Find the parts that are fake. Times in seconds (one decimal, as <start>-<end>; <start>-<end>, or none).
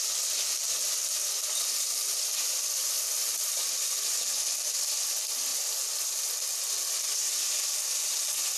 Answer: none